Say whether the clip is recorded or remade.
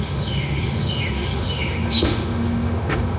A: remade